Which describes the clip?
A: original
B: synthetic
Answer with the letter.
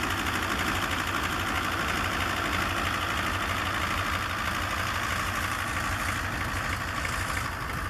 A